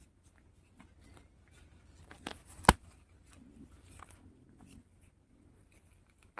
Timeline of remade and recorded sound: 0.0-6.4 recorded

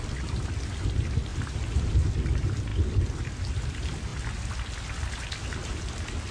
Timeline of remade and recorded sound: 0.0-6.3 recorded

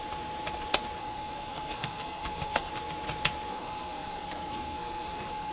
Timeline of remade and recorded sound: 0.0-1.0 recorded; 1.0-2.7 remade; 2.7-3.5 recorded; 3.5-5.5 remade

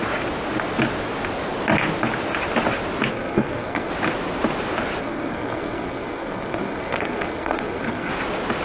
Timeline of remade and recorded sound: 0.0-3.1 recorded; 3.1-3.9 remade; 3.9-5.0 recorded; 5.0-8.1 remade; 8.1-8.6 recorded

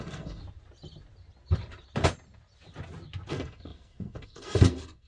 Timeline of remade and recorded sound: 0.0-0.4 remade; 0.4-3.3 recorded; 3.3-5.1 remade